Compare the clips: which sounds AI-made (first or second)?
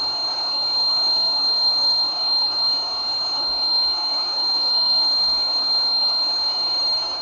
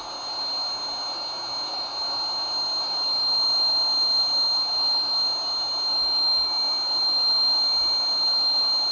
first